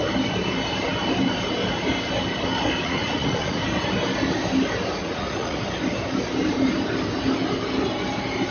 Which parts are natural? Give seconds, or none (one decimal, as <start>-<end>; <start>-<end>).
0.0-2.8; 3.6-5.0; 5.6-8.5